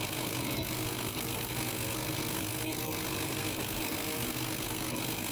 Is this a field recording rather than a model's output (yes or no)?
no